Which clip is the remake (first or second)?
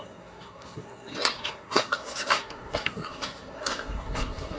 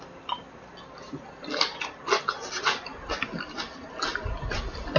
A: first